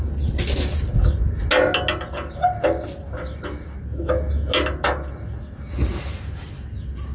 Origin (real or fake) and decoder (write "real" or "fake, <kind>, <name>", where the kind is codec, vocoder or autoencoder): real